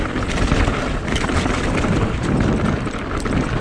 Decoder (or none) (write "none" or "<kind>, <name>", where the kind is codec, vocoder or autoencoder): vocoder, BigVGAN v2